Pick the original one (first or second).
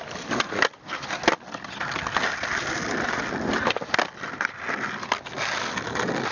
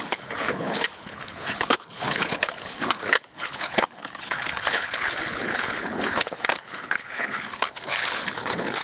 first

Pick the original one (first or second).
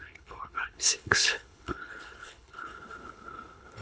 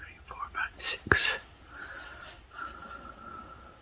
second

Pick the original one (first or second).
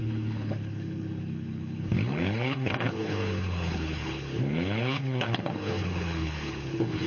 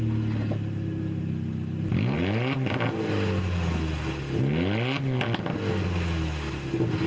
second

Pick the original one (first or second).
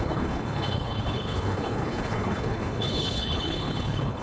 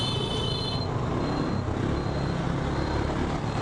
second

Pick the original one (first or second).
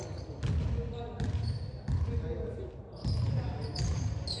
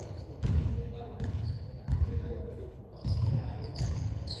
first